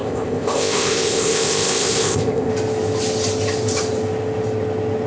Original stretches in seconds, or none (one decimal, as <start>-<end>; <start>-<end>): 2.5-5.1